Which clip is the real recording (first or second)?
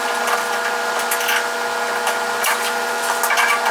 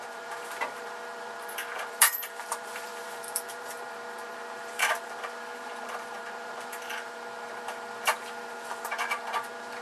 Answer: first